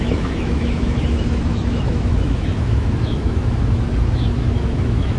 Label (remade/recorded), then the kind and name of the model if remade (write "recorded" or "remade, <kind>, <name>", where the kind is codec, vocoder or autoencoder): remade, autoencoder, DAC-VAE